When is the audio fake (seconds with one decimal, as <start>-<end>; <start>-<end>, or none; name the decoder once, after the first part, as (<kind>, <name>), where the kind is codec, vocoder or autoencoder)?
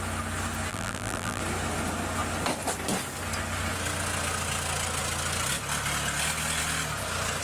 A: 0.7-1.4 (vocoder, BigVGAN v2)